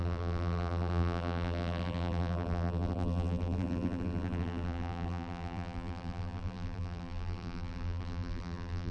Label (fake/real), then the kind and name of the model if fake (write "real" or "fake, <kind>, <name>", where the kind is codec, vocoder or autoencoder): fake, vocoder, BigVGAN v2